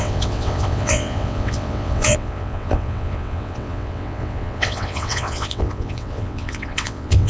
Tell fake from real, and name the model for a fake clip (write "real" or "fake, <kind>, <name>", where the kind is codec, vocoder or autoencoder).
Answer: fake, vocoder, WaveNeXt